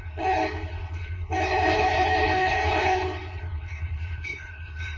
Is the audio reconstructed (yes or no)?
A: yes